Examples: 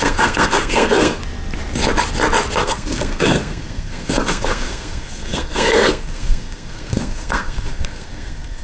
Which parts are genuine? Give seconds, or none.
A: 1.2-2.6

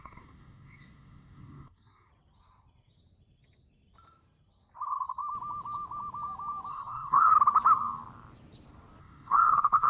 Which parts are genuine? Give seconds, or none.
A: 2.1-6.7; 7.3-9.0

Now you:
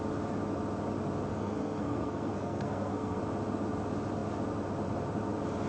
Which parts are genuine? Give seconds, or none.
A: 0.0-1.3; 3.2-5.7